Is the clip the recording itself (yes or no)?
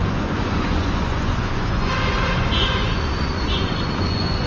no